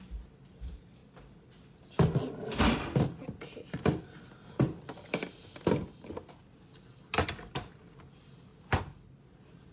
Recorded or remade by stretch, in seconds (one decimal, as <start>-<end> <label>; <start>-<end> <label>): 0.0-9.7 recorded

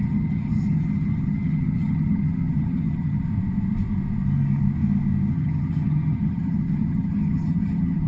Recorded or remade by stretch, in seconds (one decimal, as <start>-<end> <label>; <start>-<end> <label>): 0.0-3.3 remade; 3.3-5.3 recorded; 5.3-8.1 remade

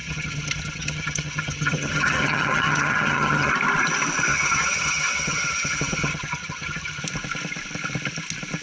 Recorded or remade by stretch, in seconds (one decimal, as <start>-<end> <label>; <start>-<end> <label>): 0.0-3.5 remade; 3.5-4.3 recorded; 4.3-7.0 remade; 7.0-8.6 recorded

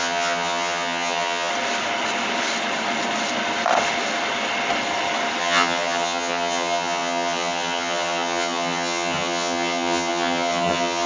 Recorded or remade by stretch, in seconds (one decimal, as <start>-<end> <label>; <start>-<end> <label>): 0.0-1.5 remade; 1.5-5.4 recorded; 5.4-11.1 remade

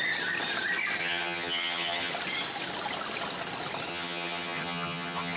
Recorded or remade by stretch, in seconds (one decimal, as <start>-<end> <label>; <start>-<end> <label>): 0.0-1.0 recorded; 1.0-2.1 remade; 2.1-3.9 recorded; 3.9-5.4 remade

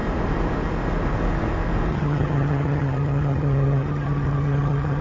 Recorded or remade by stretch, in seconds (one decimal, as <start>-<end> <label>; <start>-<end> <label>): 0.0-1.9 recorded; 1.9-5.0 remade